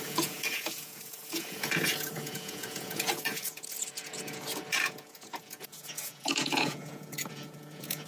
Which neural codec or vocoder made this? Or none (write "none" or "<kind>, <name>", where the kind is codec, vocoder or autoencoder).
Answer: vocoder, Vocos